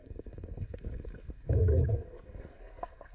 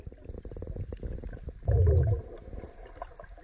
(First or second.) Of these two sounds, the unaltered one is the second